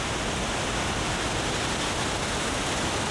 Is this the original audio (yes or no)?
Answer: yes